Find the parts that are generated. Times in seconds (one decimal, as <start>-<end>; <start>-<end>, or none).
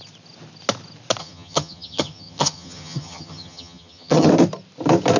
1.2-4.3